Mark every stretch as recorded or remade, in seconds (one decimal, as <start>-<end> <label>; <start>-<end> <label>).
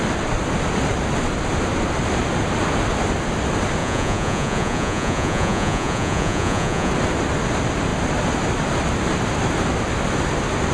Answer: 0.0-3.8 recorded; 3.8-6.9 remade; 6.9-10.7 recorded